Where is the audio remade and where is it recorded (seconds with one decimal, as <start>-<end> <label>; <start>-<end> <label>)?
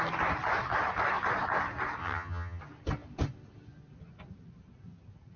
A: 0.0-2.0 recorded; 2.0-2.6 remade; 2.6-5.4 recorded